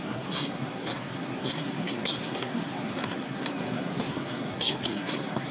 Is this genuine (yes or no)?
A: no